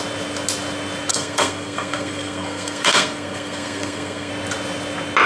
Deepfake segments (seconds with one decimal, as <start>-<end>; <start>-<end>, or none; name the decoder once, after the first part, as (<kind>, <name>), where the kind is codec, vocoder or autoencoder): 1.1-4.3 (codec, SNAC)